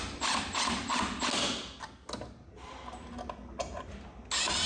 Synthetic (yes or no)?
no